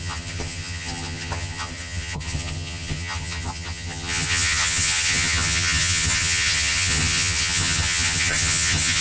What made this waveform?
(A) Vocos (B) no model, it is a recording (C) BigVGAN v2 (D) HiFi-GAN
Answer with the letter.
D